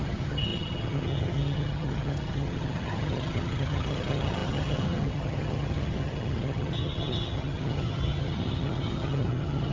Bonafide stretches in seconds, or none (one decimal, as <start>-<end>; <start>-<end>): none